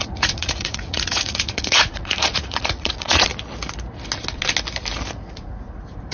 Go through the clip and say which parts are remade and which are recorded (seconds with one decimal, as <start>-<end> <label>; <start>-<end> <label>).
0.0-3.3 remade; 3.3-5.1 recorded; 5.1-6.1 remade